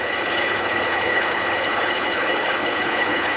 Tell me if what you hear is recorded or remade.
remade